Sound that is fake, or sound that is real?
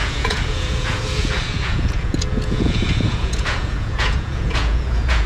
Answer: fake